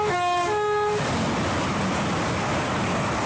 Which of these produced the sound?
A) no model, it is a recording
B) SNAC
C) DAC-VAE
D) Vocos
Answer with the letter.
A